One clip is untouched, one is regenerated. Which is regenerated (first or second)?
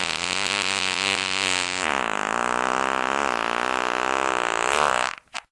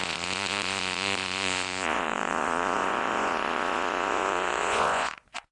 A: second